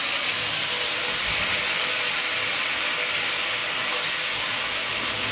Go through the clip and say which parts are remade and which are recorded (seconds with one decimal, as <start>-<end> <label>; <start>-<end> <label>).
0.0-5.3 recorded